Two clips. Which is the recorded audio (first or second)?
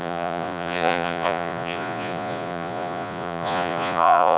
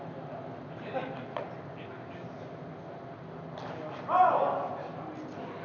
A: second